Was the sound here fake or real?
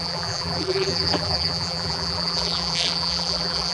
fake